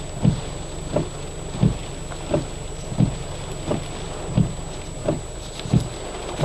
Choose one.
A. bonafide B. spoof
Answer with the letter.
A